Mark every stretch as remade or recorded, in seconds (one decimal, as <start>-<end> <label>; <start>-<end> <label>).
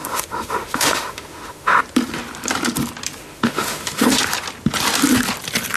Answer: 0.0-1.8 remade; 1.8-3.2 recorded; 3.2-4.1 remade; 4.1-5.8 recorded